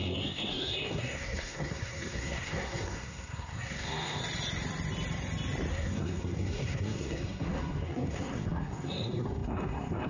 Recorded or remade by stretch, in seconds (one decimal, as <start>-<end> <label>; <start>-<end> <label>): 0.0-4.2 remade; 4.2-5.7 recorded; 5.7-10.1 remade

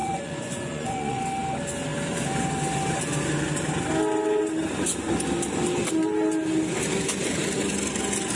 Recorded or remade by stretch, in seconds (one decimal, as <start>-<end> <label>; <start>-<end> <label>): 0.0-1.2 remade; 1.2-8.4 recorded

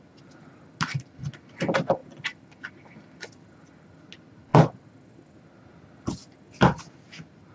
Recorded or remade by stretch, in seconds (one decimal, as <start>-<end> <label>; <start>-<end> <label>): 0.0-7.5 recorded

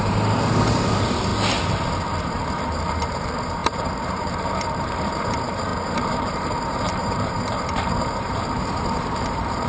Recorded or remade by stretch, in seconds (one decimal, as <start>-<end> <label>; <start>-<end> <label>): 0.0-1.3 remade; 1.3-2.2 recorded; 2.2-9.7 remade

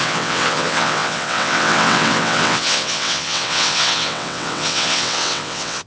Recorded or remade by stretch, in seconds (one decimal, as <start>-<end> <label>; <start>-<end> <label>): 0.0-5.9 remade